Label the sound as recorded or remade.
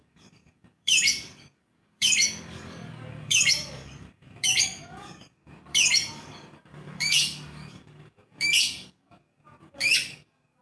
remade